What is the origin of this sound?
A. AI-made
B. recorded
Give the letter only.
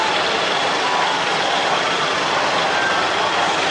B